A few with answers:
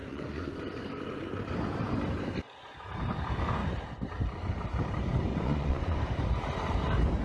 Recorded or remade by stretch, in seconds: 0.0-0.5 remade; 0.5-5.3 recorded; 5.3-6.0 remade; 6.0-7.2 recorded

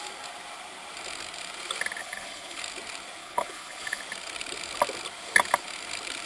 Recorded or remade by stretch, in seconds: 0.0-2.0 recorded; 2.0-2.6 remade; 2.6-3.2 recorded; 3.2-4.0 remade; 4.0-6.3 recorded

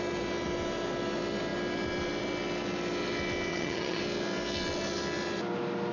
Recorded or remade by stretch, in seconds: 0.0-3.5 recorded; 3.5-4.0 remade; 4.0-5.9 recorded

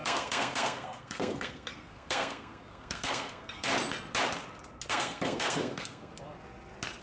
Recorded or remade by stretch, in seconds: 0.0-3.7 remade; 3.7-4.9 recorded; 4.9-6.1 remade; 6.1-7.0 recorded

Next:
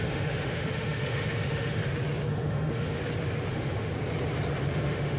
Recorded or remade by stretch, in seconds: 0.0-1.8 remade; 1.8-2.3 recorded; 2.3-3.0 remade; 3.0-3.5 recorded; 3.5-3.9 remade; 3.9-4.7 recorded; 4.7-5.2 remade

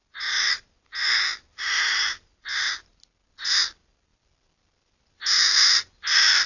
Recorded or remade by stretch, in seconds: 0.0-0.6 remade; 0.6-4.1 recorded; 4.1-5.3 remade; 5.3-6.5 recorded

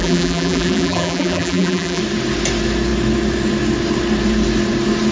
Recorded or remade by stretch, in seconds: 0.0-2.0 remade; 2.0-5.1 recorded